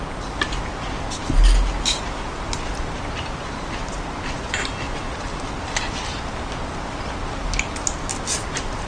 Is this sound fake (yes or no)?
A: no